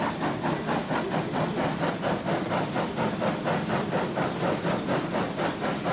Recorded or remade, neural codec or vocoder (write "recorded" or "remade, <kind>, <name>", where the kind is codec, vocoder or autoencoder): recorded